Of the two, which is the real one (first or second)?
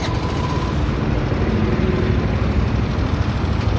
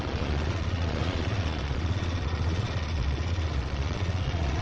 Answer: first